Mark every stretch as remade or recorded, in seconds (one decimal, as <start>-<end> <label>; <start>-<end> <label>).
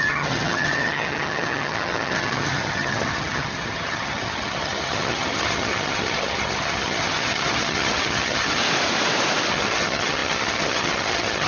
0.0-8.6 remade; 8.6-9.5 recorded; 9.5-11.5 remade